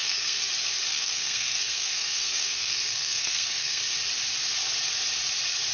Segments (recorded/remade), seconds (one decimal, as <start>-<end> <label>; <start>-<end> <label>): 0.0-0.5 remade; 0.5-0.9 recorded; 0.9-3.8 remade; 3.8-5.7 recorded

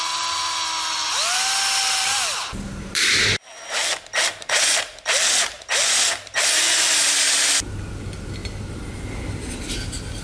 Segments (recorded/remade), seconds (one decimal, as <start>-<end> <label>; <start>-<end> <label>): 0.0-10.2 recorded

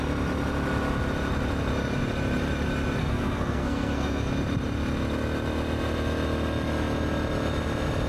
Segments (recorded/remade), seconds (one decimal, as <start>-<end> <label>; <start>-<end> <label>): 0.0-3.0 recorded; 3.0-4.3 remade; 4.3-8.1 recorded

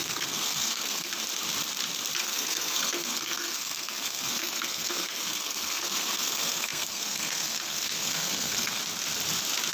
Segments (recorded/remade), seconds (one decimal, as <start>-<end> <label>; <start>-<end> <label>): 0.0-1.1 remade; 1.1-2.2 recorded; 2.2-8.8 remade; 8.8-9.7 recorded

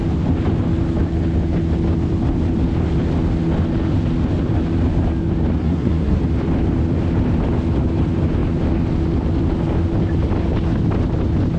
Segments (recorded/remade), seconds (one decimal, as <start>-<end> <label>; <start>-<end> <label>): 0.0-5.6 recorded; 5.6-6.2 remade; 6.2-11.6 recorded

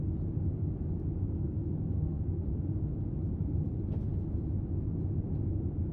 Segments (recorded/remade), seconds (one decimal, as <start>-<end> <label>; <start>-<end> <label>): 0.0-1.2 recorded; 1.2-2.4 remade; 2.4-5.9 recorded

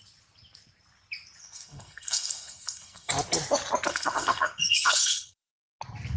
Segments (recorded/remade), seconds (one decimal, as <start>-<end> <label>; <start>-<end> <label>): 0.0-1.4 recorded; 1.4-3.1 remade; 3.1-3.9 recorded; 3.9-5.5 remade; 5.5-6.2 recorded